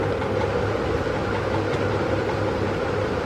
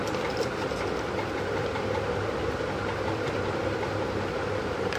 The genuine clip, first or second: first